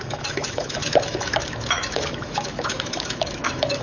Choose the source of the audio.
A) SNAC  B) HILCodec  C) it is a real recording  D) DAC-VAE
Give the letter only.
D